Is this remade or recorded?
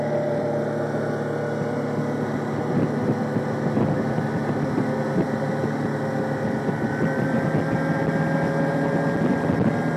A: recorded